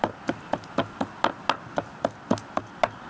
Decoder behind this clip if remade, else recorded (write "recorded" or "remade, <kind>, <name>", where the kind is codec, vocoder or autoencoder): recorded